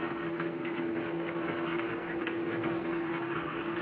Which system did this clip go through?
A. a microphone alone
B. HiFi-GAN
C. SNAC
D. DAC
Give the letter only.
C